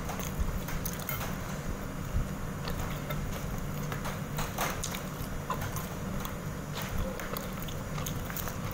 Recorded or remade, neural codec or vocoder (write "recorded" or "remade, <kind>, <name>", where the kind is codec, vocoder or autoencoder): recorded